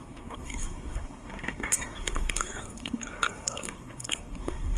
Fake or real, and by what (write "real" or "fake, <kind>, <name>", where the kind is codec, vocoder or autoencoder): fake, codec, SNAC